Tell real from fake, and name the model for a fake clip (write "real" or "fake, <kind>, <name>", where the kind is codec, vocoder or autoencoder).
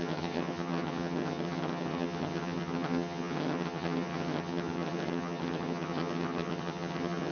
fake, vocoder, HiFi-GAN